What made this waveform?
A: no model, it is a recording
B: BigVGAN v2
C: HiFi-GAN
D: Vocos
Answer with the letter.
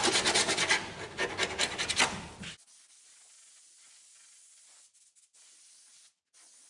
A